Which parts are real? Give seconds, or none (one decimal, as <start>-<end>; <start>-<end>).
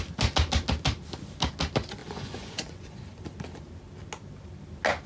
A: 0.0-2.0; 3.0-5.1